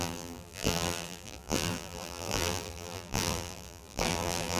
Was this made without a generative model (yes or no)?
no